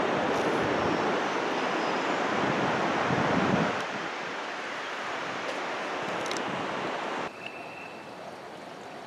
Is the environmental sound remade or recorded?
recorded